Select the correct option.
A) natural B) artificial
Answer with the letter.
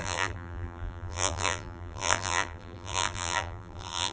B